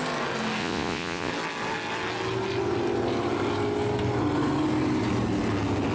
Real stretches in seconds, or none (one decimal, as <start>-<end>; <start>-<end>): 0.0-0.6; 1.3-5.9